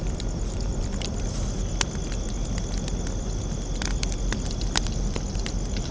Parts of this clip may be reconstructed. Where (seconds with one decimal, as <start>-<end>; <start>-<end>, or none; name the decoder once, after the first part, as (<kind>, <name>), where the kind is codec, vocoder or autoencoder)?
0.7-1.6 (vocoder, BigVGAN v2)